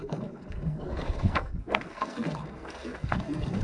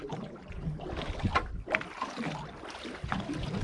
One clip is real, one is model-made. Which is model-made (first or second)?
first